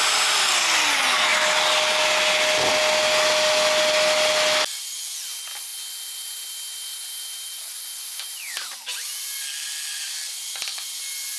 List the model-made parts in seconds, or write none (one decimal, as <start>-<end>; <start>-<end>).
none